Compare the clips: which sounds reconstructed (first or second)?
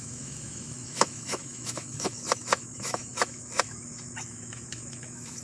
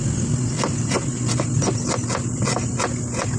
first